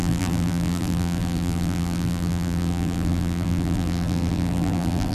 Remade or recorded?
remade